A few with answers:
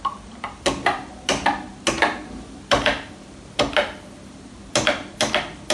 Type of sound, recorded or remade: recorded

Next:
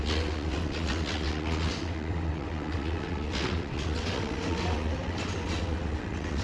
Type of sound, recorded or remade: remade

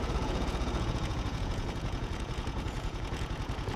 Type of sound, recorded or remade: remade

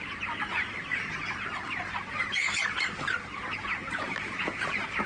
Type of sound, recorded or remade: remade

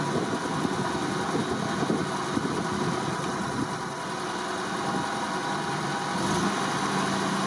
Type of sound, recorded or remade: recorded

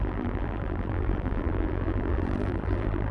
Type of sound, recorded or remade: remade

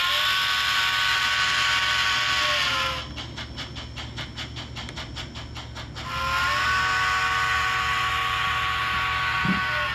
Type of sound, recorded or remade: recorded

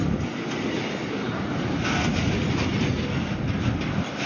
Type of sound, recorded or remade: recorded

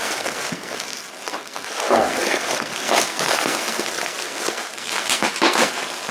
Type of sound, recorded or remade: remade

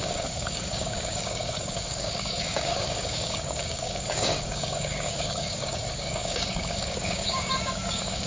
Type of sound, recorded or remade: remade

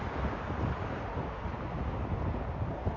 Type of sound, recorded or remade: recorded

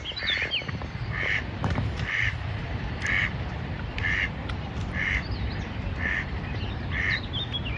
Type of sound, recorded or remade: remade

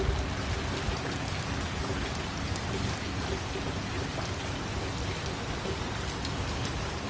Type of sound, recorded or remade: recorded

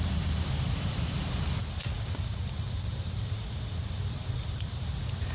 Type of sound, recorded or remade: remade